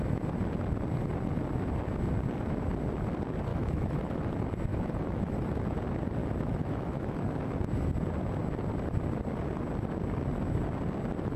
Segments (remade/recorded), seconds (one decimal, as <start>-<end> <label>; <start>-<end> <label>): 0.0-3.5 recorded; 3.5-4.3 remade; 4.3-4.7 recorded; 4.7-5.8 remade; 5.8-6.2 recorded; 6.2-7.2 remade; 7.2-11.4 recorded